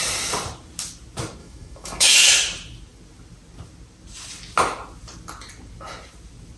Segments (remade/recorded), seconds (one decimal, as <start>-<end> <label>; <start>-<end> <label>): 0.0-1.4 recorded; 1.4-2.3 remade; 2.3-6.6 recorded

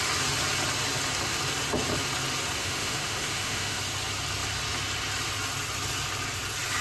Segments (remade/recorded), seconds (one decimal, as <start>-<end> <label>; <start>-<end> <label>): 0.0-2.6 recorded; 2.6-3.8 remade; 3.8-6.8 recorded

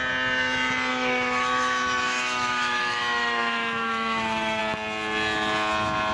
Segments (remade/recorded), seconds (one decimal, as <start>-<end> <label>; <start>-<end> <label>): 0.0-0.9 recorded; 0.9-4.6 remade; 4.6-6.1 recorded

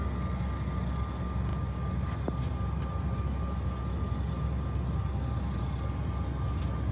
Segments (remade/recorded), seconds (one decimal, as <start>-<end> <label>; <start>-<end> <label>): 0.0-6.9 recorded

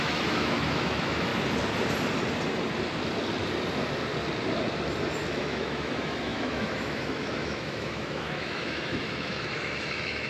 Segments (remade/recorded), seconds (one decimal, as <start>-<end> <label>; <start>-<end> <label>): 0.0-1.3 remade; 1.3-5.3 recorded; 5.3-10.3 remade

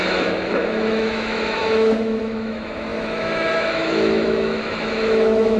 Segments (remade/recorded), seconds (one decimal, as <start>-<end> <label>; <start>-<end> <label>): 0.0-5.6 remade